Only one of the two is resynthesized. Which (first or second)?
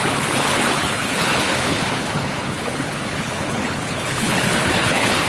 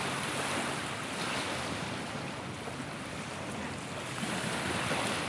first